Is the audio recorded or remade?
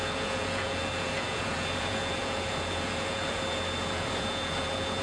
remade